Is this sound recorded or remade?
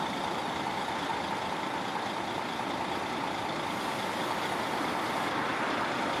recorded